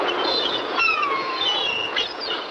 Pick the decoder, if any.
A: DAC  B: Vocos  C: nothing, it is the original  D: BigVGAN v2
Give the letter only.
B